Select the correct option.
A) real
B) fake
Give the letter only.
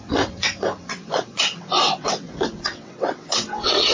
B